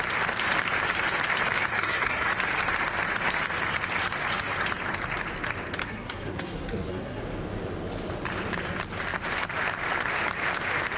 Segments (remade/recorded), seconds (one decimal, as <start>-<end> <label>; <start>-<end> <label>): 0.0-1.7 recorded; 1.7-2.3 remade; 2.3-5.8 recorded; 5.8-7.2 remade; 7.2-11.0 recorded